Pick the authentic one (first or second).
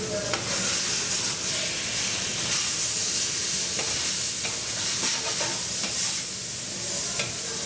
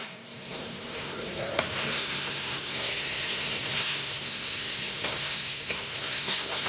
first